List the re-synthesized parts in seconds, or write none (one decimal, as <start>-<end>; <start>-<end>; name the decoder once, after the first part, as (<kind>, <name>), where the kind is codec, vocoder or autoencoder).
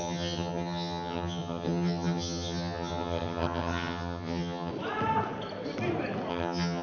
0.0-4.7 (vocoder, HiFi-GAN); 6.3-6.8